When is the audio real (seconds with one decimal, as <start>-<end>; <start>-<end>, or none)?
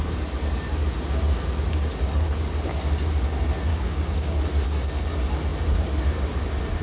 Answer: 0.0-3.7; 4.4-6.8